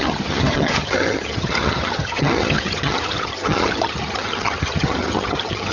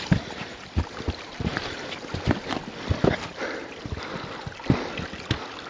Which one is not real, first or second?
first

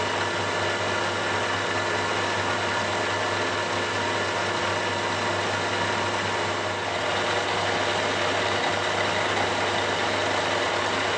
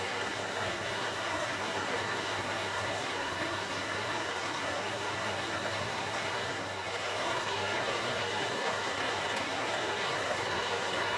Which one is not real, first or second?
second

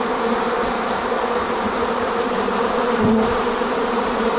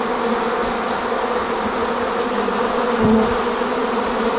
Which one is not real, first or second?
first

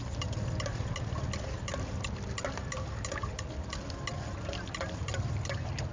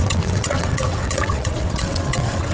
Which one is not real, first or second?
second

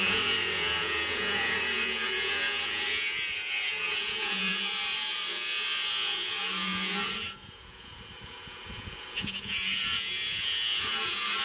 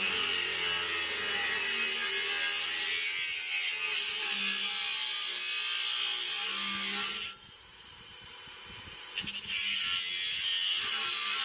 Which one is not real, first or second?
first